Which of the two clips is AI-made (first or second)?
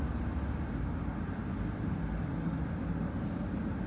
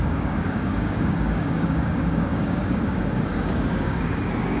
second